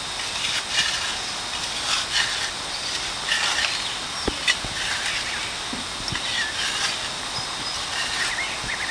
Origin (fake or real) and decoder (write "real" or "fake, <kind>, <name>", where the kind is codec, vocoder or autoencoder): real